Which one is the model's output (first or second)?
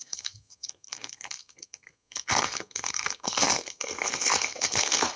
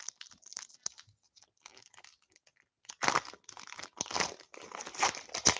first